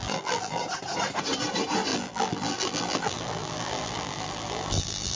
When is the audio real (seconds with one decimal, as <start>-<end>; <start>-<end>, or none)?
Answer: 0.6-1.9